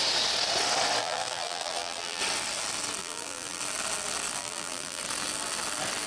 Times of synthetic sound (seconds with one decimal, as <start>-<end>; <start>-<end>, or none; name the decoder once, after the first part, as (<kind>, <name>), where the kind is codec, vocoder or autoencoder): 1.0-2.2 (vocoder, BigVGAN v2); 3.0-3.6; 4.4-5.0